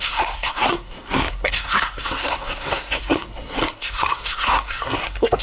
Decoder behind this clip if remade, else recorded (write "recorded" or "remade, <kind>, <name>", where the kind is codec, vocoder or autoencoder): remade, codec, SNAC